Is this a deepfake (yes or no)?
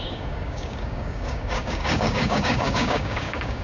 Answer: yes